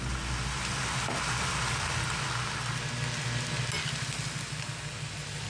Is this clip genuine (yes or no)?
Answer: yes